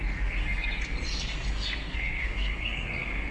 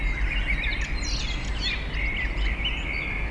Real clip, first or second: second